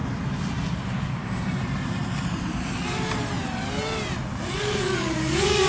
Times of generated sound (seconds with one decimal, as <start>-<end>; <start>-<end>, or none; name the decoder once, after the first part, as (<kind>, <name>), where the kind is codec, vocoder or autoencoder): 0.7-1.2 (codec, DAC); 4.6-5.7